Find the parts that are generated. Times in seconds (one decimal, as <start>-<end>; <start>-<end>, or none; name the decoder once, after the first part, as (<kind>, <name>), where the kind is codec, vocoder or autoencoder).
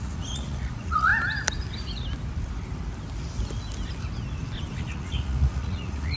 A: 0.0-1.1 (vocoder, Vocos); 4.8-6.2